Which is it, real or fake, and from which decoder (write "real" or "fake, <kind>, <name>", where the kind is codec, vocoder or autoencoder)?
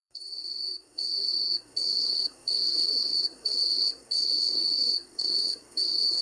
fake, codec, SNAC